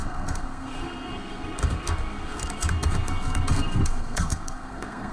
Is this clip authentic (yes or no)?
no